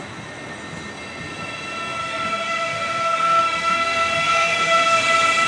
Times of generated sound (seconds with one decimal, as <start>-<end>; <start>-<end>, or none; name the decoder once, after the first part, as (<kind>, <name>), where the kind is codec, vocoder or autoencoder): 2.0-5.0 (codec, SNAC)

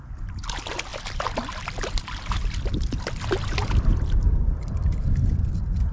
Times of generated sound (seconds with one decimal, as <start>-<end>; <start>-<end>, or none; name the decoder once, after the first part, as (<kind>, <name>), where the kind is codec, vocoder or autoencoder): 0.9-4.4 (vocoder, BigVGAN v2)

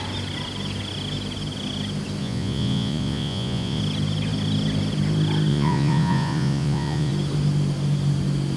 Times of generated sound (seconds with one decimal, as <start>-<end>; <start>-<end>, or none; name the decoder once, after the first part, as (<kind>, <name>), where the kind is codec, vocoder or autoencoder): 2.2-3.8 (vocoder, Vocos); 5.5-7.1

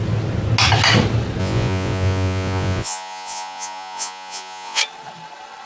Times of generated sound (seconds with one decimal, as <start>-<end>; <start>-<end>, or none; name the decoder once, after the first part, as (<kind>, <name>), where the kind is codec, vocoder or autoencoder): 1.4-4.8 (vocoder, Vocos)

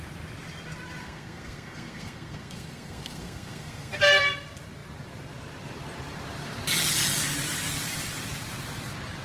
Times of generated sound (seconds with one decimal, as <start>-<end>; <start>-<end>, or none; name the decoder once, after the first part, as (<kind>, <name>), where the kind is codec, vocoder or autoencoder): 1.0-4.0 (codec, SNAC)

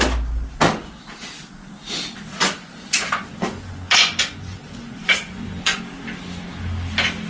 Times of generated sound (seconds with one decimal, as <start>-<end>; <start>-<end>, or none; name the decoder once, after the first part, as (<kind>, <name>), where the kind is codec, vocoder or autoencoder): 2.3-5.8 (vocoder, Vocos)

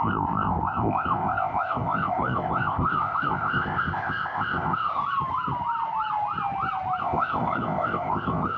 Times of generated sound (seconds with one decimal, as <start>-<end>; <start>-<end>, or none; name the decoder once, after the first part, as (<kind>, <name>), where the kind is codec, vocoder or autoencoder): 0.0-5.0 (codec, ZipCodec); 7.0-8.6

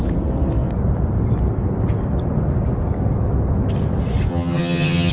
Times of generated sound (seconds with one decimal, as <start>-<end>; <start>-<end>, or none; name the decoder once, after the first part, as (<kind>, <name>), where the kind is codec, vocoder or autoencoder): 4.3-5.1 (vocoder, HiFi-GAN)